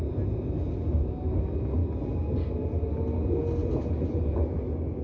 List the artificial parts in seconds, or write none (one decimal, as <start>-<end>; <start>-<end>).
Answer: none